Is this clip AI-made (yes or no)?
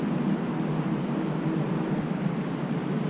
no